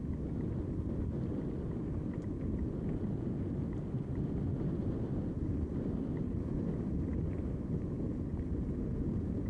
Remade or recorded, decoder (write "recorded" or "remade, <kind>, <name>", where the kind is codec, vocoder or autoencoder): recorded